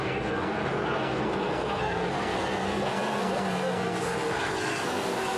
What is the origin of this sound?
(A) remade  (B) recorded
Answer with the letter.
A